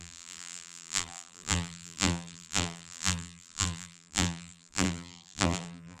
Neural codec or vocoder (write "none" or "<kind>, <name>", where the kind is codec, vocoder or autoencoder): vocoder, BigVGAN v2